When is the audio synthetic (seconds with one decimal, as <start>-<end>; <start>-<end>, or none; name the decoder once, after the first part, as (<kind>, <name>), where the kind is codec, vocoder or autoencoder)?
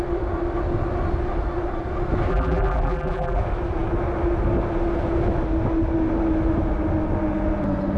2.3-3.4 (vocoder, BigVGAN v2)